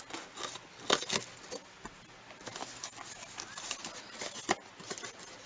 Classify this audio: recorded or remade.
recorded